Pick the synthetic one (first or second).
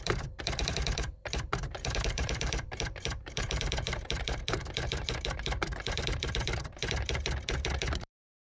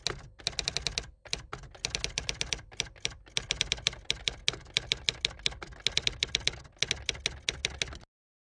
first